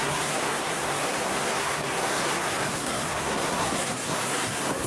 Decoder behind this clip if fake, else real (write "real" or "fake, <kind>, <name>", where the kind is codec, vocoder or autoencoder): fake, codec, SNAC